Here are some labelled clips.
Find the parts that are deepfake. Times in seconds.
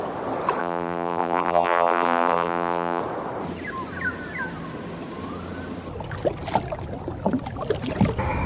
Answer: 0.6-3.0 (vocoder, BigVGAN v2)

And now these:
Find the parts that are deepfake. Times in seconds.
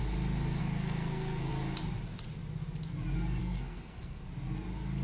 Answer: 0.6-1.5 (codec, SNAC); 3.4-4.2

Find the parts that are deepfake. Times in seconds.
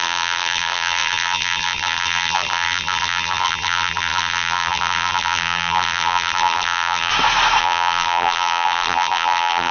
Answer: 0.0-7.1 (vocoder, BigVGAN v2); 7.6-9.7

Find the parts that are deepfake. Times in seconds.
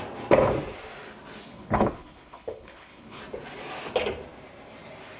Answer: 1.5-3.2 (codec, HILCodec)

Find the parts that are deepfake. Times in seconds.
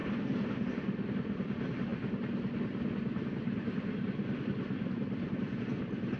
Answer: none